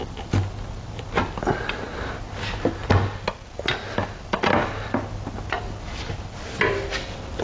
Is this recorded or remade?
recorded